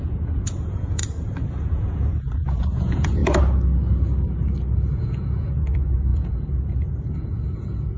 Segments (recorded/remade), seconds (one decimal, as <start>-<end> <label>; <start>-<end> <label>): 0.0-1.0 remade; 1.0-1.5 recorded; 1.5-3.2 remade; 3.2-5.0 recorded; 5.0-8.0 remade